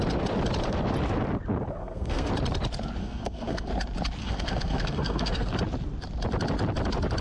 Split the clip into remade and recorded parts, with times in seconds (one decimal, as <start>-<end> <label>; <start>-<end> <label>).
0.0-1.8 recorded; 1.8-2.3 remade; 2.3-3.0 recorded; 3.0-3.7 remade; 3.7-4.2 recorded; 4.2-5.5 remade; 5.5-7.2 recorded